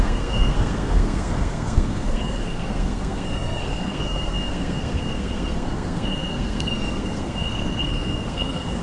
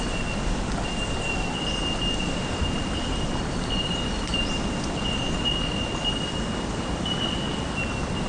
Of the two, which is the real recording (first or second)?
second